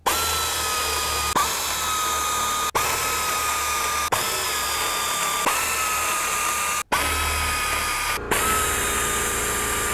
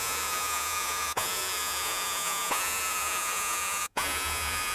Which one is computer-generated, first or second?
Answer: second